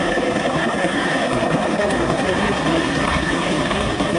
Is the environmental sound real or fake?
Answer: fake